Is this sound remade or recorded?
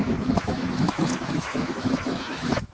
remade